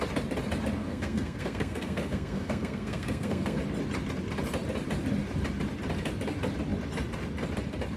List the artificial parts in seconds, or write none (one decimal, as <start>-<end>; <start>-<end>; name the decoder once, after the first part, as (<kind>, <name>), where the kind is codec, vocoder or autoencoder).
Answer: 0.8-3.6 (codec, SNAC)